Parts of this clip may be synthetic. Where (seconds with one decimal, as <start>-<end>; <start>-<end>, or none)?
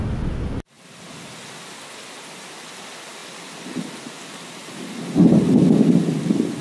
none